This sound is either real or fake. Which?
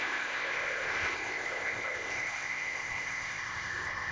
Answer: fake